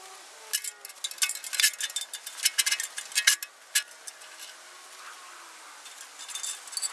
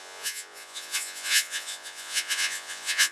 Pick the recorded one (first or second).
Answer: first